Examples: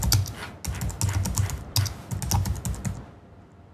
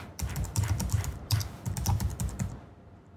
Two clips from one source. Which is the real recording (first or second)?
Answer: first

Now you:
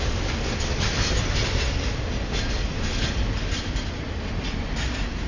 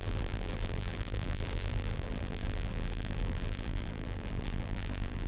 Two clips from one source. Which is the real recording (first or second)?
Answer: first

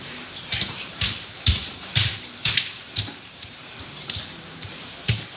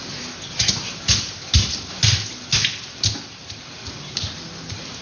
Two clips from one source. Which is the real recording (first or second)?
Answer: second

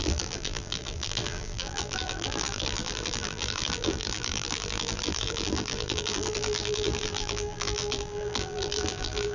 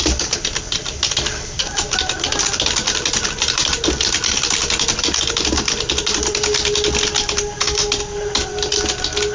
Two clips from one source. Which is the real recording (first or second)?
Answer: second